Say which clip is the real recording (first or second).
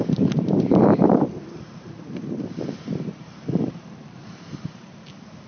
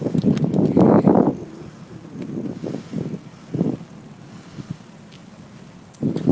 second